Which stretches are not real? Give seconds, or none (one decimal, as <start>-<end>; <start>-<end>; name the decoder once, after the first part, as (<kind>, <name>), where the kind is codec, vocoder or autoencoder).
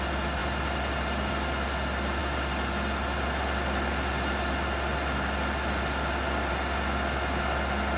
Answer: none